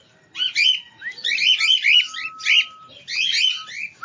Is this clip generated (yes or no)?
no